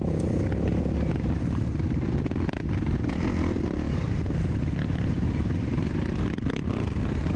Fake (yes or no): no